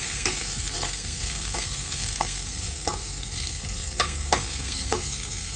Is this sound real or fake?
fake